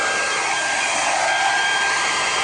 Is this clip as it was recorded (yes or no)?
no